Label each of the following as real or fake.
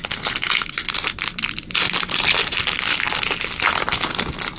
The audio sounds real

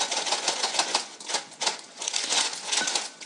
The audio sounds fake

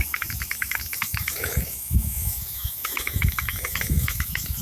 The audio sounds fake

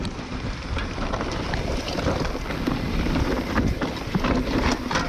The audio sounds real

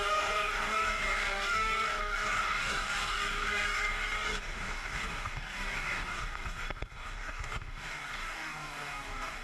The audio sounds fake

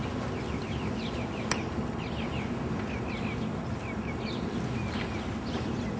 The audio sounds real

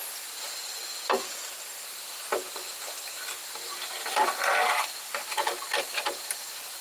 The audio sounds real